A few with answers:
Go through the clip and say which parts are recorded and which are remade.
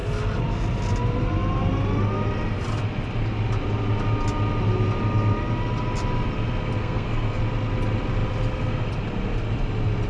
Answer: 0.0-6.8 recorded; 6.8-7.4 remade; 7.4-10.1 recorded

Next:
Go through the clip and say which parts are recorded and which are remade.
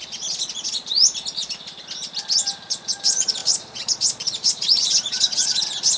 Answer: 0.0-0.8 remade; 0.8-2.7 recorded; 2.7-6.0 remade